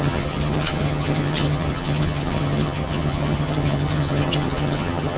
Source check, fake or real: fake